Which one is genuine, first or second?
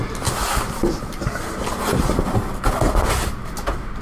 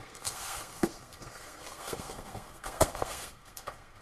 first